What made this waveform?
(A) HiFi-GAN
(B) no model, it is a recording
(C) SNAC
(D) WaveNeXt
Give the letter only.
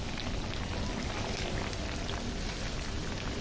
B